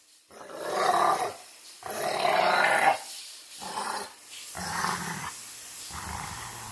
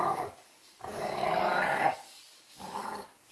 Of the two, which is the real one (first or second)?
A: first